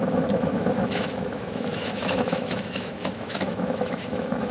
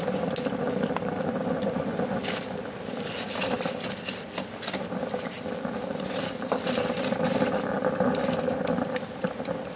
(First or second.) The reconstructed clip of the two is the first